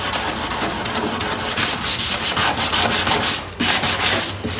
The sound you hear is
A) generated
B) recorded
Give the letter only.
B